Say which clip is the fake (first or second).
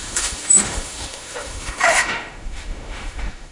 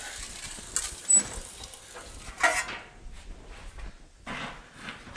first